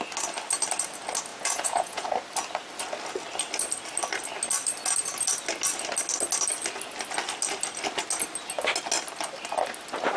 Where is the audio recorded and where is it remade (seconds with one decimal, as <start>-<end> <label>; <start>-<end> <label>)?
0.0-1.3 recorded; 1.3-2.1 remade; 2.1-10.2 recorded